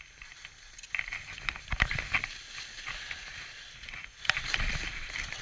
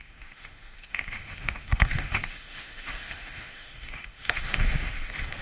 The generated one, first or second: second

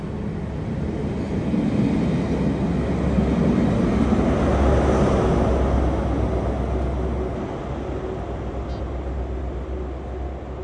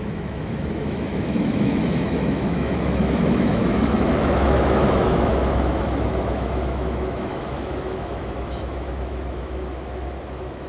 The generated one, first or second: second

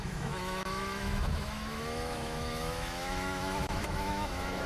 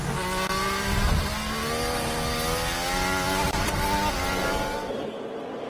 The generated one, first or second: first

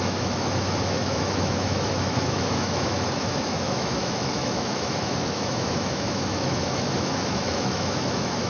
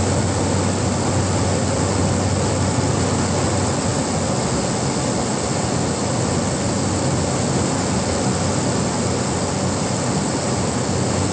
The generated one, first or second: first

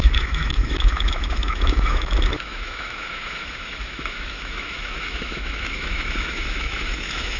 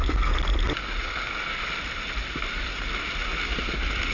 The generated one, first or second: first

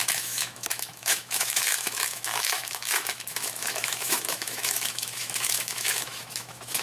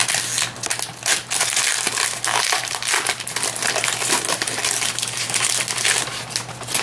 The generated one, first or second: first